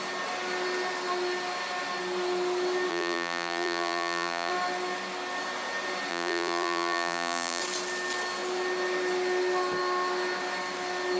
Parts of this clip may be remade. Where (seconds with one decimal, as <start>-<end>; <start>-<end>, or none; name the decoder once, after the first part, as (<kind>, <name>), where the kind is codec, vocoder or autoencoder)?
2.9-4.5 (vocoder, BigVGAN v2); 6.1-7.6